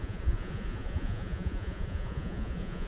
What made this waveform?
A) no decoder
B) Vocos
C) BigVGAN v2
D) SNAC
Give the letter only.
B